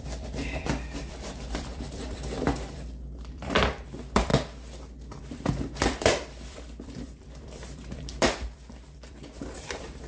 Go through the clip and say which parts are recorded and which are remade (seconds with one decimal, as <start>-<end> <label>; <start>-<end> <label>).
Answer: 0.0-4.3 remade; 4.3-5.2 recorded; 5.2-10.1 remade